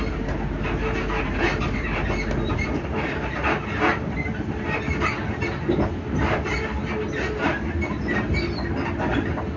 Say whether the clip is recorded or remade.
recorded